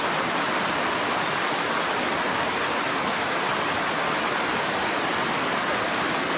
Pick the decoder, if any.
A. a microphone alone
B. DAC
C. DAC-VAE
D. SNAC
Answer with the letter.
A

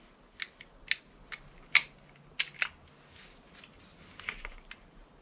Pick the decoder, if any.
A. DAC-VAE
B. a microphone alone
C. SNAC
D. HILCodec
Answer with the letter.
B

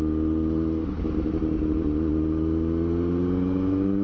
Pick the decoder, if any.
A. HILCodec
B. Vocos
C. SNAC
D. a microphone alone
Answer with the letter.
D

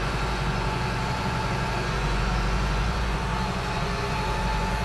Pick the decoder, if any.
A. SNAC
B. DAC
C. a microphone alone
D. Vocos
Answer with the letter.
D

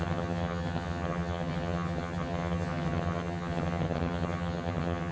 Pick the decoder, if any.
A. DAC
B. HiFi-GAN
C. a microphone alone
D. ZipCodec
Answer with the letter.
B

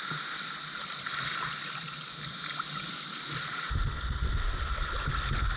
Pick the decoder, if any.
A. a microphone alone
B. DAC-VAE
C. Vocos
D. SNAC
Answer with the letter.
A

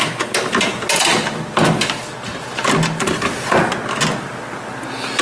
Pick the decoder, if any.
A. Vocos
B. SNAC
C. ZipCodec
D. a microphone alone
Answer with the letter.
D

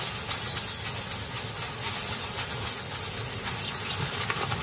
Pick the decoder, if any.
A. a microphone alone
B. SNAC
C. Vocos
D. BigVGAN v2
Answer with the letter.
A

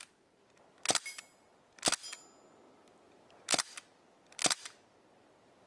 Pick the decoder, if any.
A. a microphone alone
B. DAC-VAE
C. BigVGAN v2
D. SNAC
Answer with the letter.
A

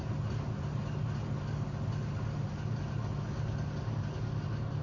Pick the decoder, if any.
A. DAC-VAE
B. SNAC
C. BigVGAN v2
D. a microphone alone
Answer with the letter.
D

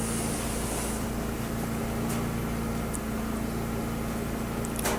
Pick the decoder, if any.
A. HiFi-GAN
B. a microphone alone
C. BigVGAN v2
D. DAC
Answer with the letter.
B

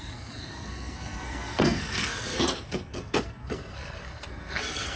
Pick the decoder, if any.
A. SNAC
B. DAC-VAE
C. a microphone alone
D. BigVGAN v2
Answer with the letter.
A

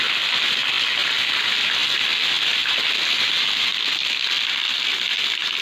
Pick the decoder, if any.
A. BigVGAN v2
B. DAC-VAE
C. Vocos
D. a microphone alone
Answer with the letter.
D